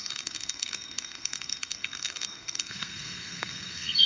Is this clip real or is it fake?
fake